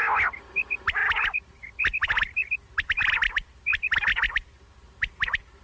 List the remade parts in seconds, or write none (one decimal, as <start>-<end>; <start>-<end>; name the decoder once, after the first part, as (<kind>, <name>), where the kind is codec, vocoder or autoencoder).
none